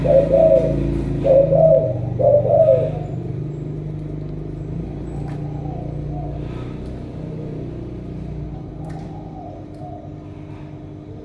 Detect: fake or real real